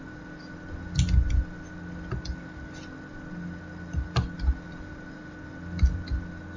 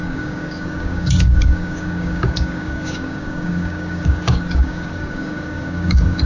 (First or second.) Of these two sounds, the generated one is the second